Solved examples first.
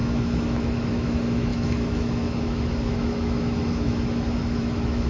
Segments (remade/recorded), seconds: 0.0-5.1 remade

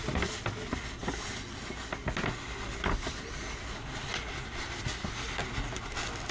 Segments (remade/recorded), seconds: 0.0-6.3 recorded

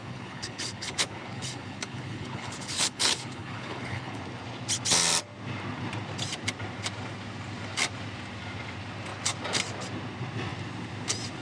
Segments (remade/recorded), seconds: 0.0-4.2 remade; 4.2-11.4 recorded

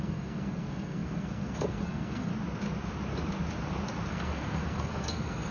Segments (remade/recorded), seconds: 0.0-2.3 remade; 2.3-4.1 recorded; 4.1-5.5 remade

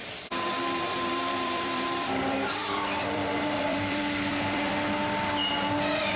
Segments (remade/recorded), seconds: 0.0-2.2 remade; 2.2-2.6 recorded; 2.6-4.7 remade; 4.7-6.2 recorded

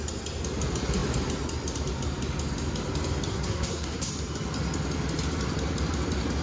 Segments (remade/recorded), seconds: 0.0-3.3 recorded; 3.3-4.1 remade; 4.1-6.4 recorded

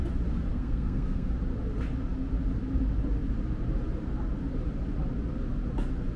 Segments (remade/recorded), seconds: 0.0-0.5 recorded; 0.5-1.3 remade; 1.3-6.2 recorded